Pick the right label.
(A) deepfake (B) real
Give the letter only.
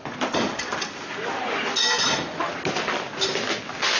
B